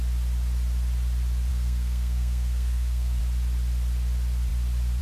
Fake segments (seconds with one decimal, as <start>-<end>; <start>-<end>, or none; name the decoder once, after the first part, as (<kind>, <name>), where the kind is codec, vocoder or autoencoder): 1.5-3.2 (codec, SNAC)